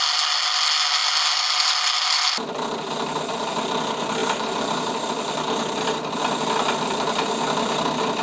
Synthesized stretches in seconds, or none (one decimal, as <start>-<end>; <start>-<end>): 4.2-4.9